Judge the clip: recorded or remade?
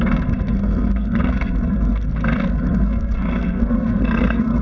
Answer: remade